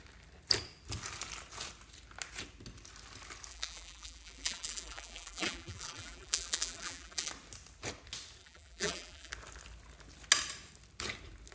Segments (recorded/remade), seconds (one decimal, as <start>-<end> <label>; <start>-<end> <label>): 0.0-3.5 recorded; 3.5-7.3 remade; 7.3-8.4 recorded; 8.4-9.3 remade; 9.3-11.5 recorded